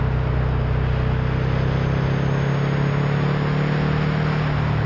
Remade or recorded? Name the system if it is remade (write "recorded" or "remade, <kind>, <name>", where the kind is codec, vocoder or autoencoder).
recorded